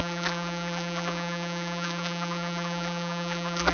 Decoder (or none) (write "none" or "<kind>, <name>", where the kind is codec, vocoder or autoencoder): vocoder, BigVGAN v2